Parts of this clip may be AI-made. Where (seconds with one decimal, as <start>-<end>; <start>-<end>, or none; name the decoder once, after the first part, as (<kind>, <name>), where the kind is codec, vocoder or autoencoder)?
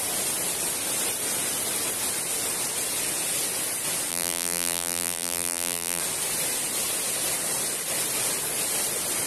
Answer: 4.1-6.0 (vocoder, BigVGAN v2)